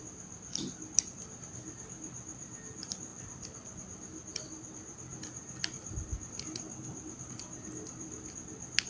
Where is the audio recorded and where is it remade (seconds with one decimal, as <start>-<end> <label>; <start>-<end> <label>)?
0.0-8.9 recorded